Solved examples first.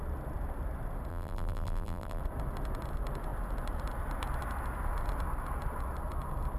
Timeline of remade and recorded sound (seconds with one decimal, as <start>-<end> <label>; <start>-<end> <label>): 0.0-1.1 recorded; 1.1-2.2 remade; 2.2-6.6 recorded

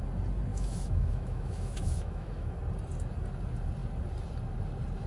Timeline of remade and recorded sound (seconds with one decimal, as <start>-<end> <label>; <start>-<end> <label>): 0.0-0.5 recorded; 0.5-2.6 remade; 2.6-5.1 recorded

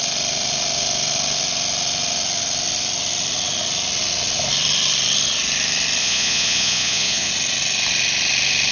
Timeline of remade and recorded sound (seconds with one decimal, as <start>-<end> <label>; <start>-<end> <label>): 0.0-6.0 recorded; 6.0-7.3 remade; 7.3-8.7 recorded

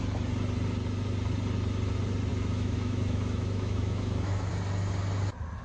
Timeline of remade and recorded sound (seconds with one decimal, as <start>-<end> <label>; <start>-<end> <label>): 0.0-2.3 recorded; 2.3-4.5 remade; 4.5-5.6 recorded

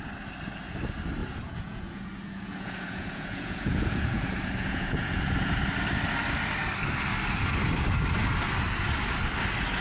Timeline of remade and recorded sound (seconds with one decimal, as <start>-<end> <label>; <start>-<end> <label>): 0.0-1.2 recorded; 1.2-5.6 remade; 5.6-9.8 recorded